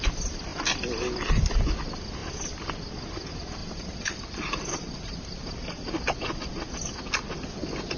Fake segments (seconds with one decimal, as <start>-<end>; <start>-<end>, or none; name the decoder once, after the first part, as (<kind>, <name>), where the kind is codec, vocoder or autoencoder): 3.6-6.5 (vocoder, BigVGAN v2)